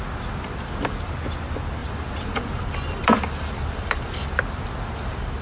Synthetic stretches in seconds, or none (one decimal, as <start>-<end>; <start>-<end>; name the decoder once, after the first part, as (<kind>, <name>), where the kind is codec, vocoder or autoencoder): 1.8-4.4 (vocoder, BigVGAN v2)